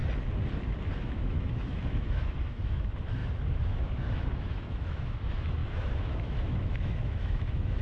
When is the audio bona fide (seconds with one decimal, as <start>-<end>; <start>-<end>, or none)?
0.0-1.0